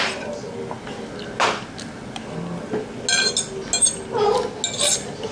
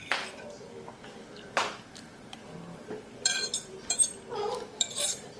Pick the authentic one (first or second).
first